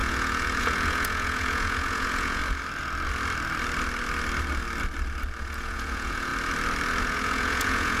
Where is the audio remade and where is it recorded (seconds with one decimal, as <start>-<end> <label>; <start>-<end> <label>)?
0.0-2.4 remade; 2.4-5.4 recorded; 5.4-6.3 remade; 6.3-7.0 recorded; 7.0-8.0 remade